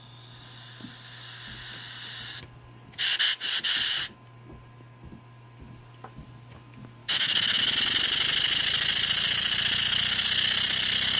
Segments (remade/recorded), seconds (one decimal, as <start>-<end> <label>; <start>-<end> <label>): 0.0-7.0 recorded; 7.0-7.6 remade; 7.6-11.2 recorded